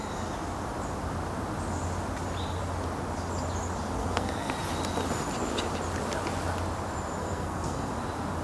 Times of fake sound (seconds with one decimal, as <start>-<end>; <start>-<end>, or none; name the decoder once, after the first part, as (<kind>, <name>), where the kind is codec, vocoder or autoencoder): 4.0-4.5 (codec, SNAC); 7.2-7.9